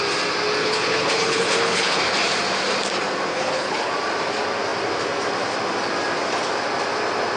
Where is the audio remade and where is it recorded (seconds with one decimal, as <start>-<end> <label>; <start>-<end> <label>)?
0.0-0.6 recorded; 0.6-2.0 remade; 2.0-3.3 recorded; 3.3-3.9 remade; 3.9-7.4 recorded